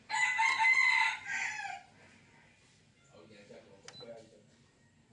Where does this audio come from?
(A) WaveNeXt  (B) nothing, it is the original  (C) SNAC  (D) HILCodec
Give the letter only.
B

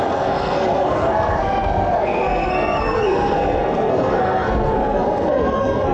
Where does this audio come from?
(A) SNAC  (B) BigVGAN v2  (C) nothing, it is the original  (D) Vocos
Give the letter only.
A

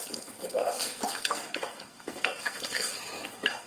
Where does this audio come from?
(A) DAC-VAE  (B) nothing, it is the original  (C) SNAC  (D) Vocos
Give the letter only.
C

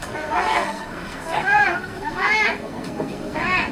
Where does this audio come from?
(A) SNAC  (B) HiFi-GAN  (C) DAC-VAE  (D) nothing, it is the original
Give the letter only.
A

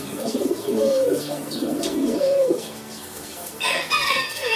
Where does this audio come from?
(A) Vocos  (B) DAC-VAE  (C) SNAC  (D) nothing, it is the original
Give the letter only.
C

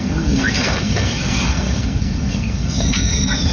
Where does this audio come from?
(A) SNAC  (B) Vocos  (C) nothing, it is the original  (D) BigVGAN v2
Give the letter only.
A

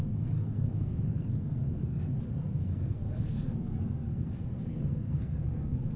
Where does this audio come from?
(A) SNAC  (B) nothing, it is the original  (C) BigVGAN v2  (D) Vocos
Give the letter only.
A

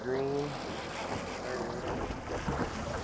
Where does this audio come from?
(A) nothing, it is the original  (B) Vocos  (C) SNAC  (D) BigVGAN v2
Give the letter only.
A